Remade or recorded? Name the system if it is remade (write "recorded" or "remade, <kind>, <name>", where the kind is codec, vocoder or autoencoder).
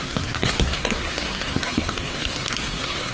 remade, codec, SNAC